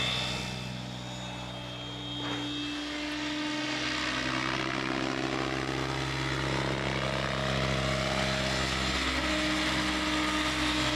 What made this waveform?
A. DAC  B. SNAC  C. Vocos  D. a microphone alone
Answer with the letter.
D